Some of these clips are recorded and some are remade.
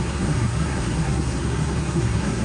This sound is remade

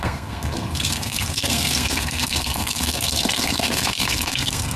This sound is remade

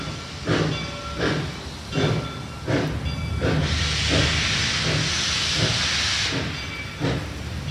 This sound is recorded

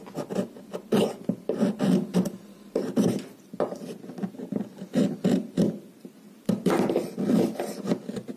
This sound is recorded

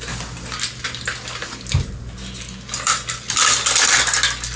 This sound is recorded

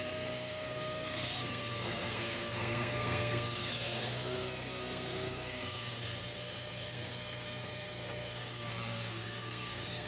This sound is remade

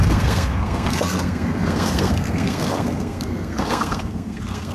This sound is remade